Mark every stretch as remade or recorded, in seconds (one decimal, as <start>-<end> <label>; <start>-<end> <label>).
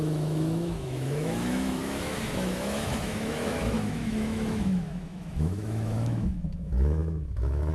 0.0-7.7 remade